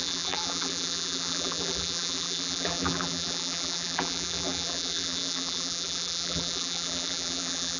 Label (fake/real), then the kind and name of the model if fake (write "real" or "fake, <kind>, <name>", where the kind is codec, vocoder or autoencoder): fake, vocoder, BigVGAN v2